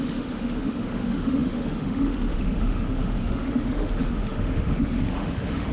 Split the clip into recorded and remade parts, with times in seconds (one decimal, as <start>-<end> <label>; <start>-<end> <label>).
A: 0.0-5.7 remade